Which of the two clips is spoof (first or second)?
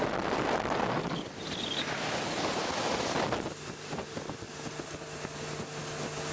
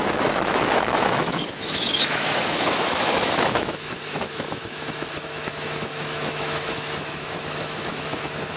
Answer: second